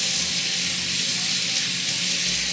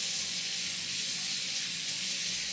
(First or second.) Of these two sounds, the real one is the first